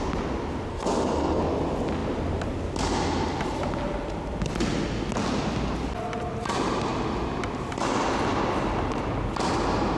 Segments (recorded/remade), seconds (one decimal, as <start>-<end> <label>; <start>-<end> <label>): 0.0-0.7 recorded; 0.7-1.4 remade; 1.4-10.0 recorded